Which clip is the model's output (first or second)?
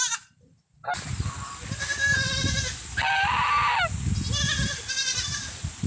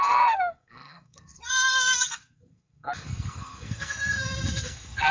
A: second